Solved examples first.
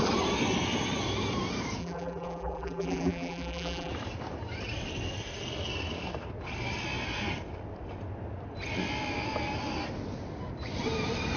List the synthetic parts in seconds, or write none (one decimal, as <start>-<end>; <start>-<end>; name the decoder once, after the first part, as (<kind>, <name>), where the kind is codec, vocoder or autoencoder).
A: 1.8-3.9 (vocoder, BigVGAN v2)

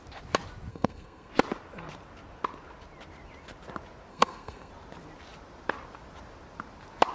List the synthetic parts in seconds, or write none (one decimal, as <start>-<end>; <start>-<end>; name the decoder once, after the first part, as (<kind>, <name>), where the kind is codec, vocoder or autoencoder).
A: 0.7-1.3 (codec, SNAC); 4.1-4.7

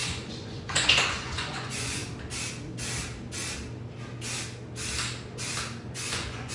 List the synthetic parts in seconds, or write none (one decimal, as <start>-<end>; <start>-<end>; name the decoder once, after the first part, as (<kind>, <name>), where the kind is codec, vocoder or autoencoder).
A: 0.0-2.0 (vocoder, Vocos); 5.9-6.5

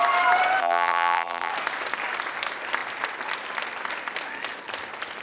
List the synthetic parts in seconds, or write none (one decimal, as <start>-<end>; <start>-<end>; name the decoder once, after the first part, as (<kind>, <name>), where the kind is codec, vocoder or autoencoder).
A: 0.6-1.5 (vocoder, BigVGAN v2)